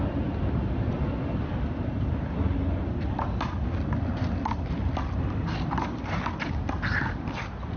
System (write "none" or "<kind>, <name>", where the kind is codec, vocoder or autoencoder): none